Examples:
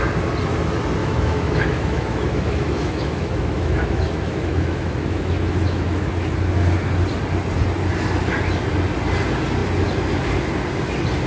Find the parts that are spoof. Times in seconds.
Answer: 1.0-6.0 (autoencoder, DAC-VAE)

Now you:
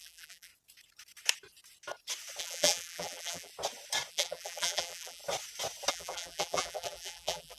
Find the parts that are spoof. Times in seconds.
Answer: 0.0-0.5 (vocoder, BigVGAN v2); 2.4-3.5; 4.1-5.2; 5.9-7.6

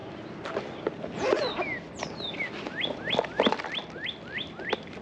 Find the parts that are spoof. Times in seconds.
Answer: none

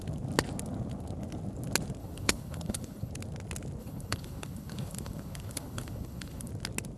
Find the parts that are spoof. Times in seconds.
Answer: 2.0-3.1 (codec, HILCodec); 3.8-6.5

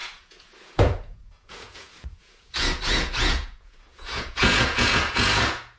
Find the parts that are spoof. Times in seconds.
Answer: 0.0-5.8 (vocoder, Vocos)